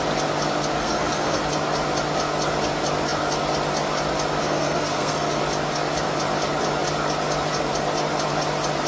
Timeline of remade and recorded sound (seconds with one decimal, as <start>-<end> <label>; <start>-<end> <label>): 0.0-0.8 recorded; 0.8-1.4 remade; 1.4-4.4 recorded; 4.4-5.4 remade; 5.4-8.9 recorded